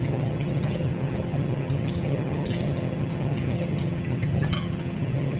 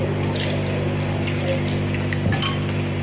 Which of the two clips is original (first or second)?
second